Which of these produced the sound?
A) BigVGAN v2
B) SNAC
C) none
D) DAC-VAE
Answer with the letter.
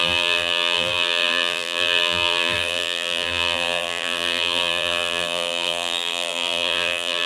A